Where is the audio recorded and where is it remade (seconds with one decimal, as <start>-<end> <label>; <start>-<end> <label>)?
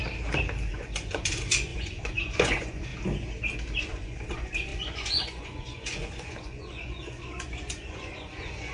0.0-0.7 recorded; 0.7-2.9 remade; 2.9-3.8 recorded; 3.8-8.7 remade